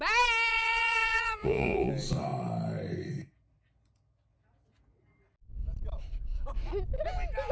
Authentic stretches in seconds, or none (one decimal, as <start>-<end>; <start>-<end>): 0.0-0.5; 1.9-7.5